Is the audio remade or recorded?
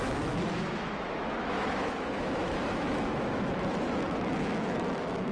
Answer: remade